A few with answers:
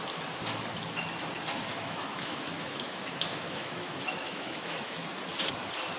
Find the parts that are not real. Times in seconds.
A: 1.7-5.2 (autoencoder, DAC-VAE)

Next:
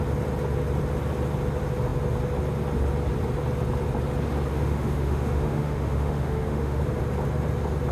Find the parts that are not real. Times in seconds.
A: 4.5-6.8 (autoencoder, DAC-VAE)